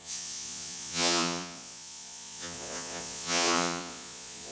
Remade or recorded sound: remade